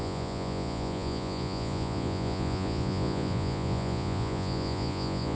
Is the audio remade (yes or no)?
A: yes